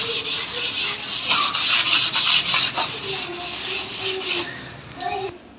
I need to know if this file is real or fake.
real